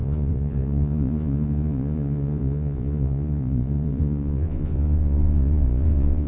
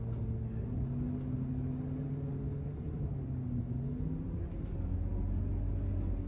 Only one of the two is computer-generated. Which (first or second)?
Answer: first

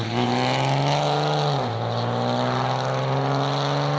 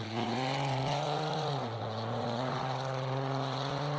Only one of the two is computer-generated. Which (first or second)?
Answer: second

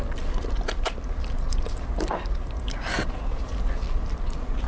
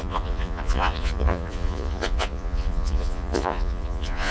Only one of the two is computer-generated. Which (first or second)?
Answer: second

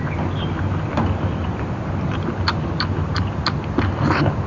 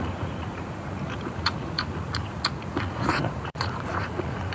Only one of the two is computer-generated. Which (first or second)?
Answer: second